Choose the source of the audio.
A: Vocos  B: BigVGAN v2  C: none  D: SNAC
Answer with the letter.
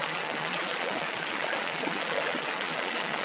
A